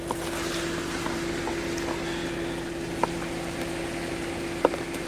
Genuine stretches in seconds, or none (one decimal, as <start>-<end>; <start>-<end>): 0.0-5.1